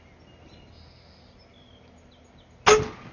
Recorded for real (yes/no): yes